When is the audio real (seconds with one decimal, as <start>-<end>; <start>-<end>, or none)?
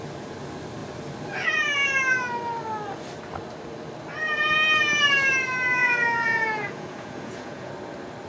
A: 0.0-5.8; 7.7-8.3